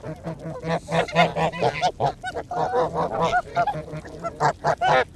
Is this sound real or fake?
real